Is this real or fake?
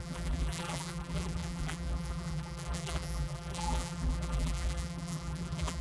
fake